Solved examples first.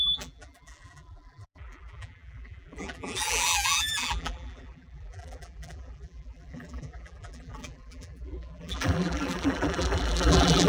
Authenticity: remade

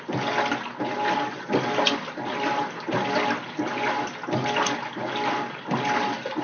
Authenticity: recorded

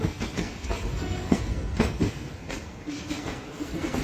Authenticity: remade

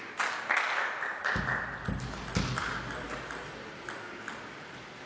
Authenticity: recorded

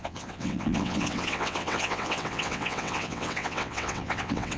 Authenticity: remade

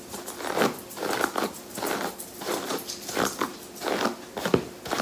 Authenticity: recorded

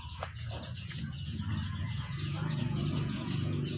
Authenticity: remade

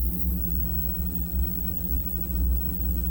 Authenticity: remade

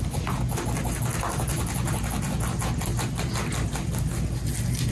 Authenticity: recorded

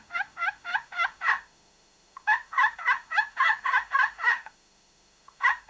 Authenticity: remade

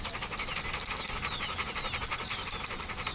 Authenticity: recorded